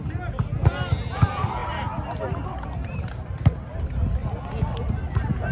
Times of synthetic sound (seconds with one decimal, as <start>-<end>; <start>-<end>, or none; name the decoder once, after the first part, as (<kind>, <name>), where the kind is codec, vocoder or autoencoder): none

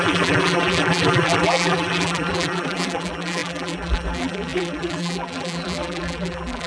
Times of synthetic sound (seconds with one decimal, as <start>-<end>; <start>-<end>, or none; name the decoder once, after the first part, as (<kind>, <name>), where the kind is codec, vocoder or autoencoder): 0.0-6.7 (vocoder, BigVGAN v2)